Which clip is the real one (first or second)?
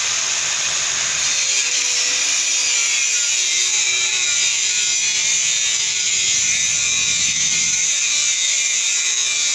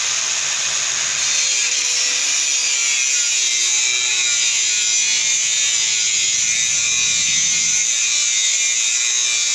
second